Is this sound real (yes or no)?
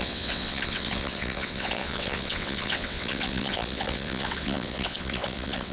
no